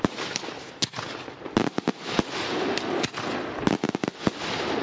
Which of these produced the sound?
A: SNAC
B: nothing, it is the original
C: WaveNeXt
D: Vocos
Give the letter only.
B